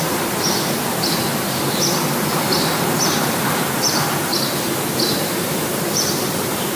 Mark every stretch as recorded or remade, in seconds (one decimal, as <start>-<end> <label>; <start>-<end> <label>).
0.0-4.3 remade; 4.3-4.9 recorded; 4.9-6.8 remade